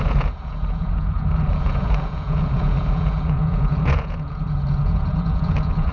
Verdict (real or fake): fake